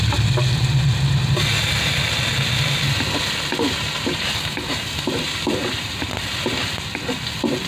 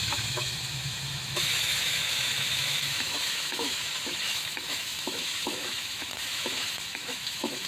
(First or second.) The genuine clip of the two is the first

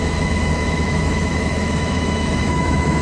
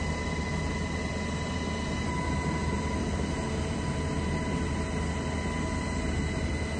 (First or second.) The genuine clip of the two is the second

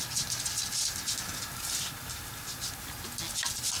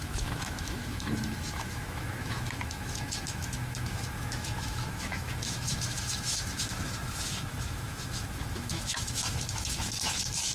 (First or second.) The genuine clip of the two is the first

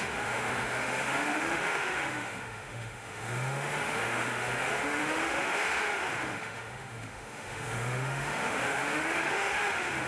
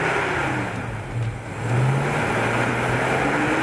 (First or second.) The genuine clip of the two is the second